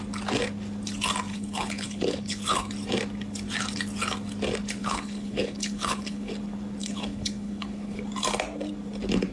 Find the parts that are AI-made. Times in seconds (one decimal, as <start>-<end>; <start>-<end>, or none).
1.3-2.7; 4.8-6.3; 6.8-8.0

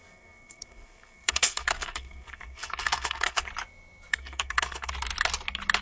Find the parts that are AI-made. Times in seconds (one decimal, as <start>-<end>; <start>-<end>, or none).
0.0-3.5; 4.1-4.9

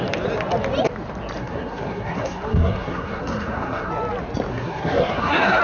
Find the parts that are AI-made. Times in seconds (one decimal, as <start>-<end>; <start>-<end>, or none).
1.4-3.9; 4.5-5.6

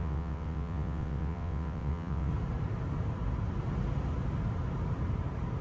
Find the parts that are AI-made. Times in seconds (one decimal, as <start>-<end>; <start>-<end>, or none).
0.0-2.3

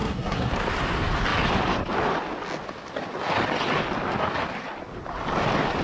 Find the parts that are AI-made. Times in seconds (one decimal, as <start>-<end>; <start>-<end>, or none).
0.0-0.5

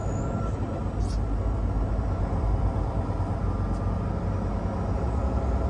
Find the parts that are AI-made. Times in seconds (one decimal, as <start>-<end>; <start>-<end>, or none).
none